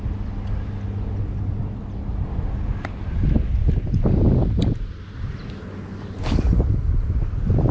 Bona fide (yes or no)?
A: yes